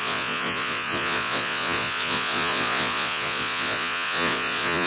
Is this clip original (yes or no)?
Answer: no